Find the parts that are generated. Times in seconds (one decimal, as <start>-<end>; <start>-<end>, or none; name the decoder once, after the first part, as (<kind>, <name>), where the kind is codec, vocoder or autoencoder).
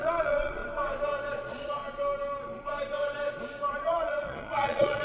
0.0-0.6 (vocoder, Vocos); 1.3-1.8; 3.7-5.0